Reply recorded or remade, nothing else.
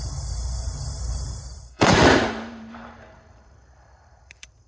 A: remade